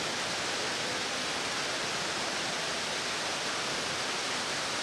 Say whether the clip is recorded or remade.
recorded